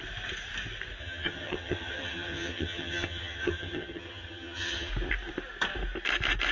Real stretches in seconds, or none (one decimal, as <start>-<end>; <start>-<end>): 0.0-1.0; 4.9-6.5